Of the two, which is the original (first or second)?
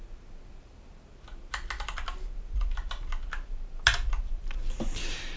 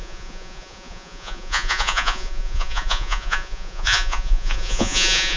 first